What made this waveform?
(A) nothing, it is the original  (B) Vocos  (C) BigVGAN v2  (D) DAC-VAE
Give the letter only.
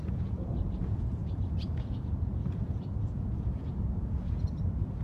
B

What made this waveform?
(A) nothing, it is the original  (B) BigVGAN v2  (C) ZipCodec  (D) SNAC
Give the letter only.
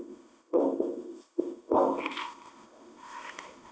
C